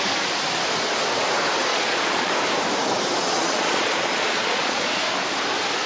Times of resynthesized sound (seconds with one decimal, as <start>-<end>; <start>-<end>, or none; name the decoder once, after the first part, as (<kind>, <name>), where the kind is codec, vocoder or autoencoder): 1.7-2.3 (vocoder, Vocos); 3.2-4.9